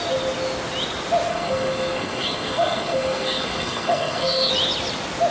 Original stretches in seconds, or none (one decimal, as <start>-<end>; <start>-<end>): 0.0-1.3; 4.5-5.3